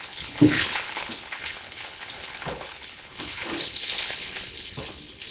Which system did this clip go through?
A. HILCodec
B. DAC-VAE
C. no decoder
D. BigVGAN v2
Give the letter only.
A